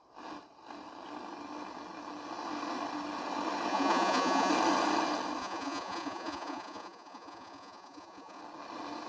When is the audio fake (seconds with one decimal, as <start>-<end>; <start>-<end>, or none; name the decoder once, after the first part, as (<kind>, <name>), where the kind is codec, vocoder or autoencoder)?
3.7-4.5 (vocoder, Vocos); 5.4-8.4